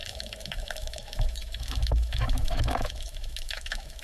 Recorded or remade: remade